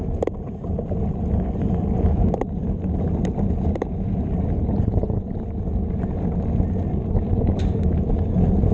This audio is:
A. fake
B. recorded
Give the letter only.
B